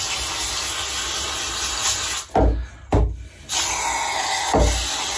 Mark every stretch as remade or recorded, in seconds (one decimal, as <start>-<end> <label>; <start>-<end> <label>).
0.0-5.2 recorded